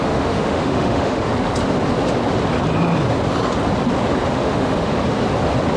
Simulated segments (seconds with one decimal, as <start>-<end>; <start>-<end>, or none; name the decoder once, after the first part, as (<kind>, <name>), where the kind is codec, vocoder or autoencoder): 0.0-1.3 (autoencoder, DAC-VAE); 4.4-4.9